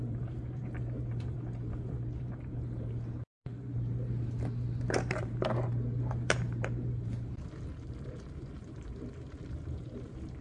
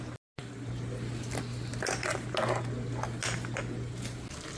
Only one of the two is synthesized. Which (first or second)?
first